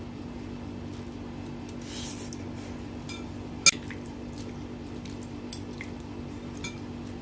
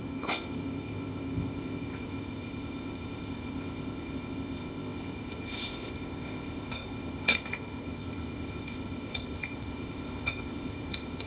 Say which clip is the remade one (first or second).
second